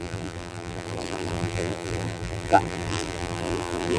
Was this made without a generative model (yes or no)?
no